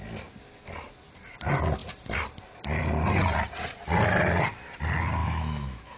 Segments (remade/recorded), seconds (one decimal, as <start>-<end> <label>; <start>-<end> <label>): 0.0-5.2 recorded; 5.2-6.0 remade